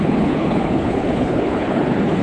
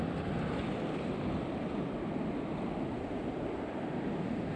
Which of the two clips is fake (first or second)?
first